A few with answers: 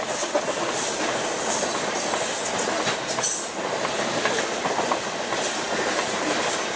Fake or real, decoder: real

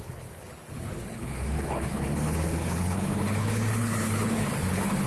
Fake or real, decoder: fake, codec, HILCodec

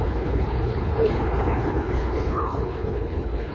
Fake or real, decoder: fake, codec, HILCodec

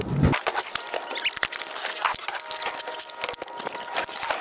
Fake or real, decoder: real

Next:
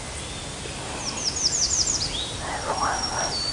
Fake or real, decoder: real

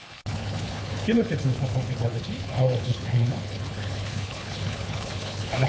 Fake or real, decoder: fake, codec, HILCodec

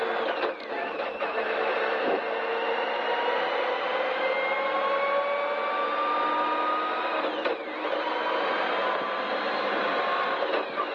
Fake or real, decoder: real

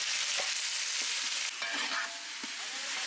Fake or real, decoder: real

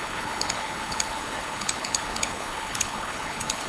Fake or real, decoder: fake, codec, HILCodec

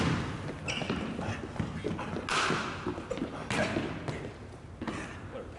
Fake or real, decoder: real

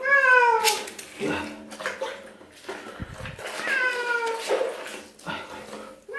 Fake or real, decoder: real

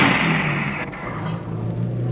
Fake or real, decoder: real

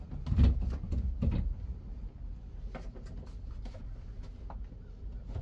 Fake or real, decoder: real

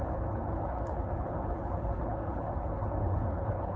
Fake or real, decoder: fake, codec, HILCodec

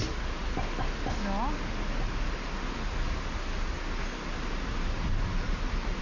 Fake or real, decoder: real